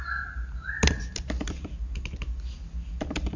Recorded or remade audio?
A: recorded